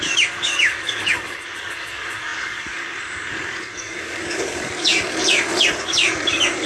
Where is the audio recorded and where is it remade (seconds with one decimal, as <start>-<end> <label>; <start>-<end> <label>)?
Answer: 0.0-6.7 remade

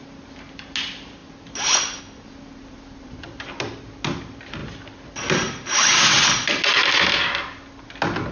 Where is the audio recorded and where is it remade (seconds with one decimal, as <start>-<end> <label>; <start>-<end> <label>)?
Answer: 0.0-8.3 recorded

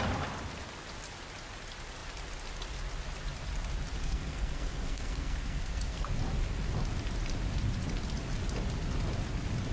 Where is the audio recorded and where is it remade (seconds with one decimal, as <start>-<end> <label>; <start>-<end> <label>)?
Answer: 0.0-4.0 recorded; 4.0-6.1 remade; 6.1-9.7 recorded

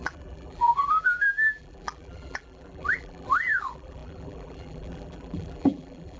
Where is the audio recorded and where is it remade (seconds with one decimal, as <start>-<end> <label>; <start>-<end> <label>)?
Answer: 0.0-6.2 remade

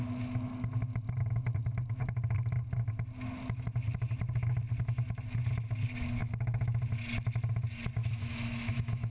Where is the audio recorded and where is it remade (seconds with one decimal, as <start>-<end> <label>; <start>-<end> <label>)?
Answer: 0.0-6.2 recorded; 6.2-6.8 remade; 6.8-8.0 recorded; 8.0-9.1 remade